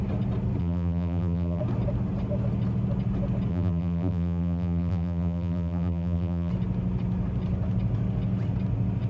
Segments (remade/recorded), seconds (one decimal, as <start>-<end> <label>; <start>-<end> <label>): 0.0-0.6 recorded; 0.6-1.6 remade; 1.6-3.5 recorded; 3.5-6.5 remade; 6.5-9.1 recorded